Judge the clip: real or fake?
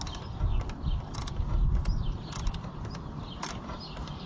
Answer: real